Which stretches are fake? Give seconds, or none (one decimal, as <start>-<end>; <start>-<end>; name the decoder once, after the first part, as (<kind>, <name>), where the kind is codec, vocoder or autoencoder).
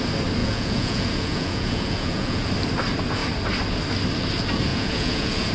0.4-2.5 (vocoder, Vocos); 4.7-5.5